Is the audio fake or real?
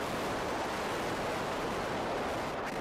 real